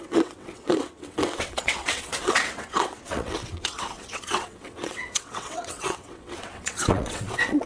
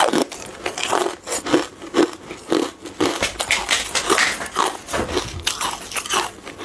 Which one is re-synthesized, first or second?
first